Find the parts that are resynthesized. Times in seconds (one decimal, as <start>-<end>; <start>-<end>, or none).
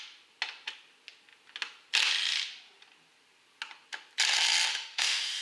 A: 4.7-5.4